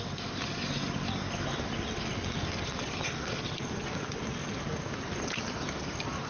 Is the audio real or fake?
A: real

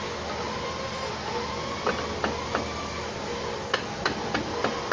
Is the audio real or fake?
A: real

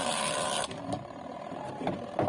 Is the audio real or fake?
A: real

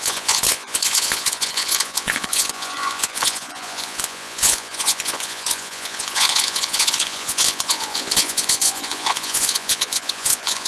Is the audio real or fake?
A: fake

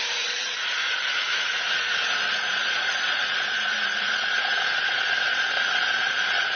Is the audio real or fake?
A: fake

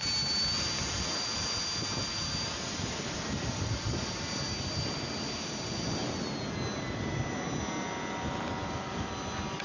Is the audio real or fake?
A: real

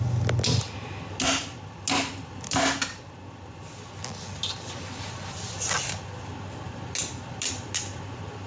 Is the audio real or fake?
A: real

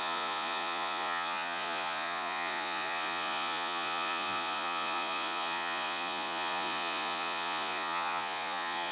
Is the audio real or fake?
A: fake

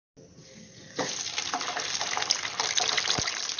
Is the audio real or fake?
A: real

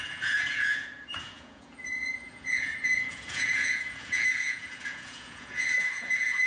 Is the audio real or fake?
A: fake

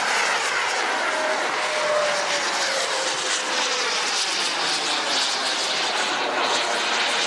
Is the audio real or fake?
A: real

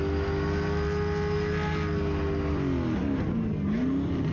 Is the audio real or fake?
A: real